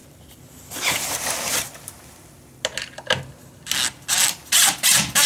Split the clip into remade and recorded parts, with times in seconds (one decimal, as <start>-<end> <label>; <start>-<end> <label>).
0.0-5.3 recorded